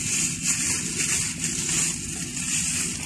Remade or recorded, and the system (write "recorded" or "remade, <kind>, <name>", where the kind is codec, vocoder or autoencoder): recorded